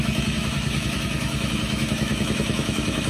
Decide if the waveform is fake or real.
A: fake